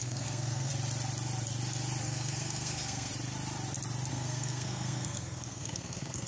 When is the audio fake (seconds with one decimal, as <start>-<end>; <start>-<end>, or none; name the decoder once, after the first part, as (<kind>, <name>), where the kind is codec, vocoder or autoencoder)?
0.0-0.7 (codec, SNAC); 2.0-3.1; 4.1-6.3